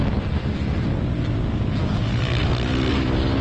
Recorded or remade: recorded